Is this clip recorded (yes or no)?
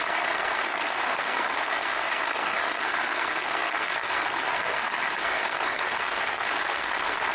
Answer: no